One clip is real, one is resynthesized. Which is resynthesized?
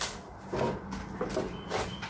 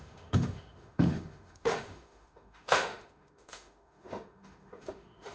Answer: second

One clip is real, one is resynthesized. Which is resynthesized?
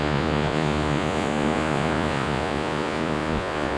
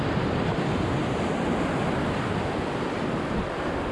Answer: first